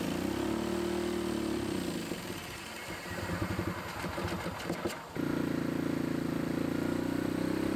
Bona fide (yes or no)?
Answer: yes